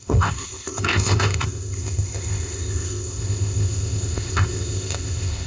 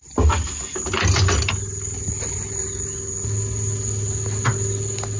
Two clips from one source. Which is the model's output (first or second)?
first